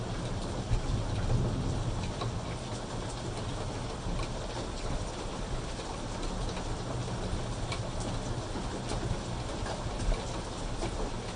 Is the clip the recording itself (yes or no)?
yes